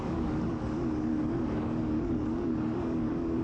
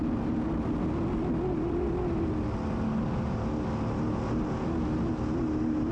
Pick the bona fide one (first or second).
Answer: second